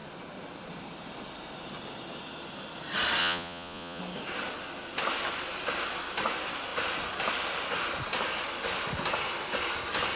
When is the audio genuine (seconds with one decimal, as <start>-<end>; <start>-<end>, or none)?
0.0-3.2; 4.0-10.2